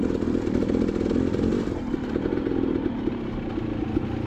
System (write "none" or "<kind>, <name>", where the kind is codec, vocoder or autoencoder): none